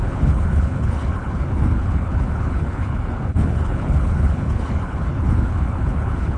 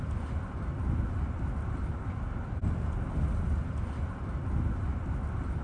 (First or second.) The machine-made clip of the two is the first